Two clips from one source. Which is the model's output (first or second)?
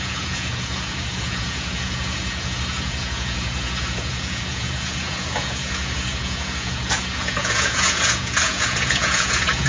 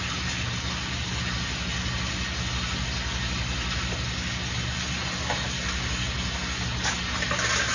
first